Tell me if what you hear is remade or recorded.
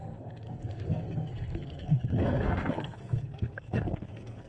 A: remade